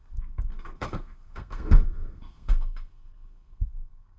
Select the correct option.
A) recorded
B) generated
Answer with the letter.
B